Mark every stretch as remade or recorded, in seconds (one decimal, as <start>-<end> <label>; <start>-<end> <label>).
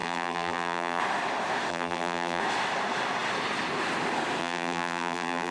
0.0-1.0 remade; 1.0-1.7 recorded; 1.7-2.4 remade; 2.4-4.4 recorded; 4.4-5.5 remade